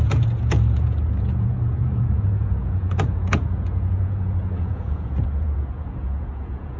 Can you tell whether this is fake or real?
fake